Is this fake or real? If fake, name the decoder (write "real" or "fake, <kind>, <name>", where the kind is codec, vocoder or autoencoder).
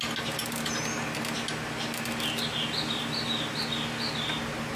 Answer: real